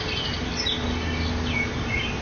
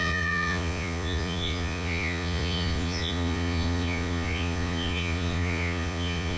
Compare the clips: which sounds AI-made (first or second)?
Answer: second